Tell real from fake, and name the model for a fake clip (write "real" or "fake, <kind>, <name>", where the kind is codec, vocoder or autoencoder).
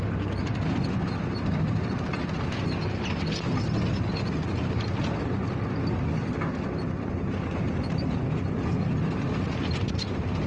real